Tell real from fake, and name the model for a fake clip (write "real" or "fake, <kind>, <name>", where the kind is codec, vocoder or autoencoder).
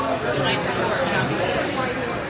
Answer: real